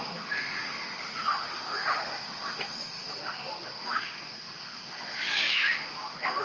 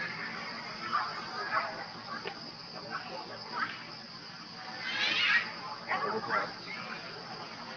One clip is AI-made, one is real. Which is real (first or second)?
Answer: second